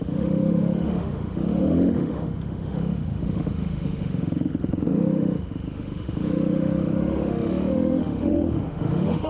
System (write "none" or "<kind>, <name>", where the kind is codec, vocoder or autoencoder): autoencoder, DAC-VAE